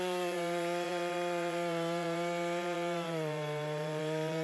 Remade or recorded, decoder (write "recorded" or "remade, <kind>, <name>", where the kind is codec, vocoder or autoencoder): remade, vocoder, BigVGAN v2